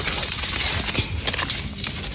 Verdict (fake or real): real